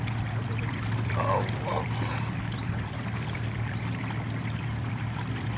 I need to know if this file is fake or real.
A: fake